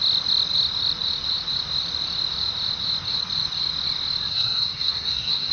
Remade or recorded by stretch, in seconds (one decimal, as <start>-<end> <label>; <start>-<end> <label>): 0.0-4.3 recorded; 4.3-5.5 remade

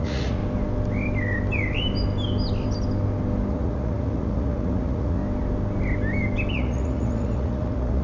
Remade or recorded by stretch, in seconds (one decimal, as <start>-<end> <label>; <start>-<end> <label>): 0.0-0.4 remade; 0.4-3.5 recorded; 3.5-5.2 remade; 5.2-6.5 recorded; 6.5-8.0 remade